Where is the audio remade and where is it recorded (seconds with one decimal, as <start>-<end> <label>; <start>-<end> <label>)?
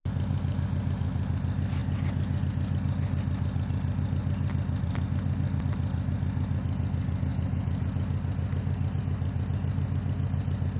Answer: 0.0-10.8 recorded